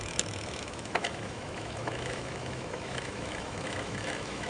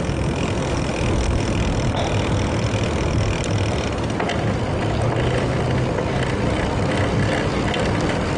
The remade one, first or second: first